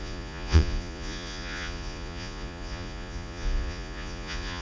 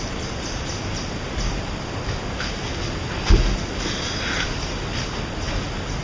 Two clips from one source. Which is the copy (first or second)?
first